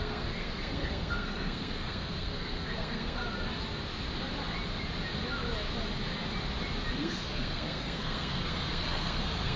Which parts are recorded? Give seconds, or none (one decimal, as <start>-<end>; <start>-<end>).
3.2-6.9